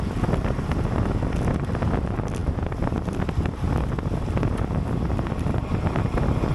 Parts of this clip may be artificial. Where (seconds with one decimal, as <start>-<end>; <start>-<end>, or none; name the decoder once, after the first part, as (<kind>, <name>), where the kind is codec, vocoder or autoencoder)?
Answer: none